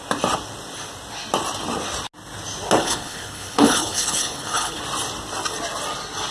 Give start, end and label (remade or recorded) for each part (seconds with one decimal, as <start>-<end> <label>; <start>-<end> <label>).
0.0-2.8 recorded; 2.8-4.8 remade; 4.8-6.3 recorded